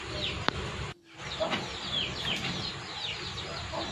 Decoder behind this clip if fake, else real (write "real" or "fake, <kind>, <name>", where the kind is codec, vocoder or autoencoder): real